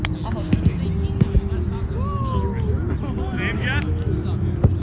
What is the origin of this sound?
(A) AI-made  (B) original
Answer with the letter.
B